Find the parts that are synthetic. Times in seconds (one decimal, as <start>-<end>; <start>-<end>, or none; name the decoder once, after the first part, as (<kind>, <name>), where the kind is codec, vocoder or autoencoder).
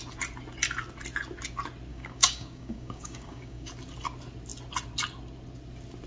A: 1.9-3.7 (codec, DAC)